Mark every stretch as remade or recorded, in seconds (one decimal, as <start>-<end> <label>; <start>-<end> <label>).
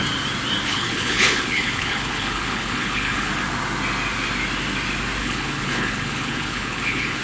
0.0-0.7 recorded; 0.7-3.3 remade; 3.3-5.2 recorded; 5.2-7.2 remade